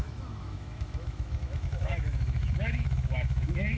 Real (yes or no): no